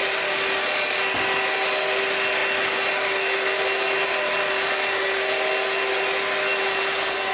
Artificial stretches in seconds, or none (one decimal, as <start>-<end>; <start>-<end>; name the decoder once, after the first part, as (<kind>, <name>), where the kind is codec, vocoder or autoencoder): none